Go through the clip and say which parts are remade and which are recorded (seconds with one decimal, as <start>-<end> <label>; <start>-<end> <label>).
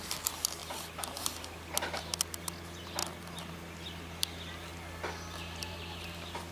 0.0-6.5 recorded